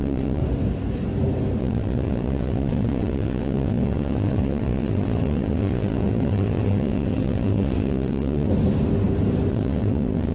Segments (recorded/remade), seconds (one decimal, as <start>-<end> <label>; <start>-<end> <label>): 0.0-0.4 remade; 0.4-1.6 recorded; 1.6-8.5 remade; 8.5-9.5 recorded; 9.5-10.3 remade